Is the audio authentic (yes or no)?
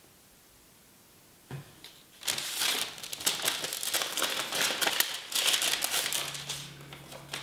yes